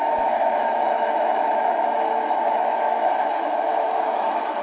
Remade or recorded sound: remade